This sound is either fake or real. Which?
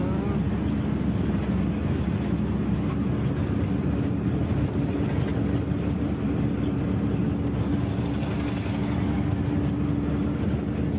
real